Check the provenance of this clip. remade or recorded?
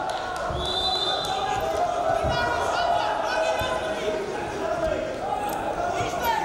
recorded